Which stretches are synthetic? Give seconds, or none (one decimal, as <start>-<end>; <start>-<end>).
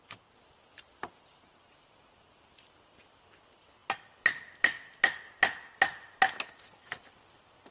none